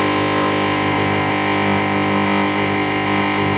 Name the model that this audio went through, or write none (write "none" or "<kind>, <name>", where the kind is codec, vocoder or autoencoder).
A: codec, ZipCodec